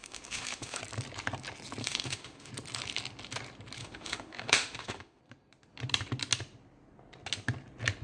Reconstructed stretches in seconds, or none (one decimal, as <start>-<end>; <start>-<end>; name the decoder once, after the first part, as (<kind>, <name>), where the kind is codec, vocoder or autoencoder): 0.0-0.8 (autoencoder, DAC-VAE); 1.8-2.5; 3.8-5.2